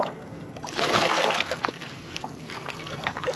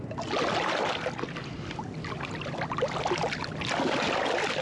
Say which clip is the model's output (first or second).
first